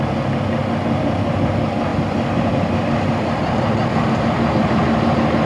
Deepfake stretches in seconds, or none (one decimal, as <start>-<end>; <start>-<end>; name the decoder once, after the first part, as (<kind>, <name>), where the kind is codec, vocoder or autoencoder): 1.9-5.5 (vocoder, BigVGAN v2)